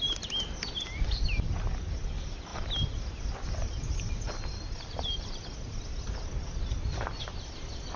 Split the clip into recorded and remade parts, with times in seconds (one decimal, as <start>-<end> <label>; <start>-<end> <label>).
0.0-8.0 recorded